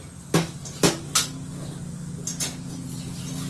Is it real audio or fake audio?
real